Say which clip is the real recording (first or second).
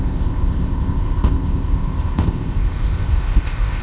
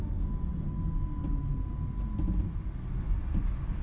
second